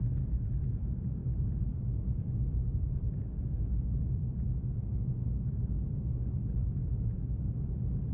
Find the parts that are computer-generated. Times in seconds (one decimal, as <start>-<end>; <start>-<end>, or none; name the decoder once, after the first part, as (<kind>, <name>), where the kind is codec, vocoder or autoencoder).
0.0-4.9 (vocoder, BigVGAN v2); 5.5-8.1